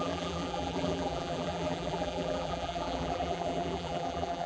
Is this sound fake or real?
fake